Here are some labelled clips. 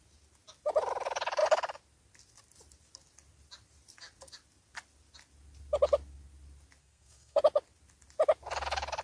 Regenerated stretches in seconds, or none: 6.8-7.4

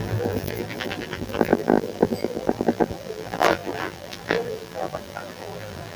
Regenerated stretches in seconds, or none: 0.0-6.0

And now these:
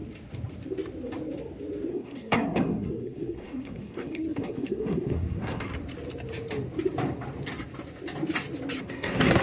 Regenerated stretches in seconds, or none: 1.9-5.7; 8.8-9.4

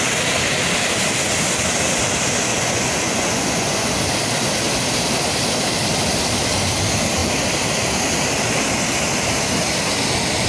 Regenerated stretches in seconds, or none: 2.5-4.0

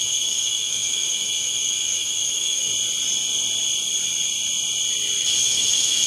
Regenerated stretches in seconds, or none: 0.0-2.7; 5.4-6.1

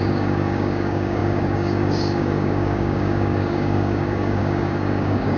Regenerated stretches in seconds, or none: 0.0-5.4

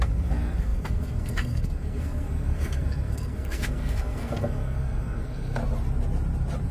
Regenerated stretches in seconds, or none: 0.0-5.6